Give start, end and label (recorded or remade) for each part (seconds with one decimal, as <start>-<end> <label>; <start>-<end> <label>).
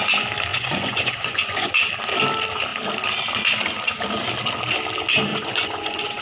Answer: 0.0-0.5 recorded; 0.5-1.7 remade; 1.7-5.3 recorded; 5.3-6.2 remade